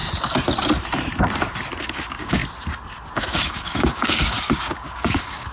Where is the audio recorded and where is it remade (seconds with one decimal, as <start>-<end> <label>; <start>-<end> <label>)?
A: 0.0-1.8 recorded; 1.8-2.4 remade; 2.4-3.1 recorded; 3.1-5.5 remade